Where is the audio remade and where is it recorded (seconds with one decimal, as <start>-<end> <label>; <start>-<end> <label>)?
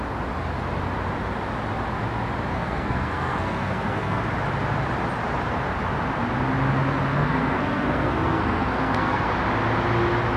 0.0-2.5 recorded; 2.5-4.2 remade; 4.2-7.1 recorded; 7.1-9.3 remade; 9.3-10.4 recorded